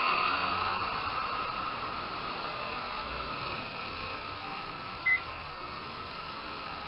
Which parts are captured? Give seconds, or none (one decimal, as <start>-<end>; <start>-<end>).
0.8-2.4